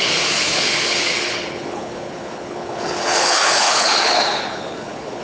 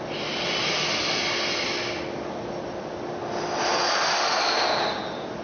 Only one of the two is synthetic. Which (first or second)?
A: first